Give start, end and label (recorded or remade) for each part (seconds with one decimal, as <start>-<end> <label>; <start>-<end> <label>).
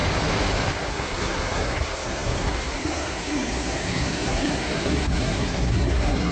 0.0-0.9 recorded; 0.9-6.3 remade